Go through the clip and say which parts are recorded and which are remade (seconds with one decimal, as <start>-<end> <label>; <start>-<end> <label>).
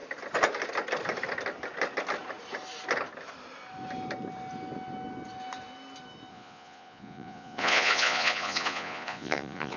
0.0-6.3 recorded; 6.3-9.8 remade